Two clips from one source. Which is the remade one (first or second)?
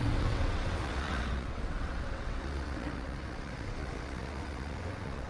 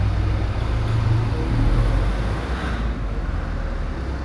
first